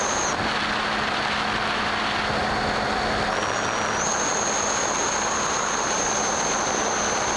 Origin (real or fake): real